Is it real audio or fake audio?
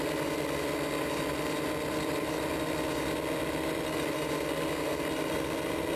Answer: real